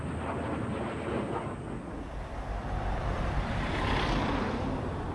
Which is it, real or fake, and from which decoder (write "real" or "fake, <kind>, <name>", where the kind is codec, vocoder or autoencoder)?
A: fake, vocoder, BigVGAN v2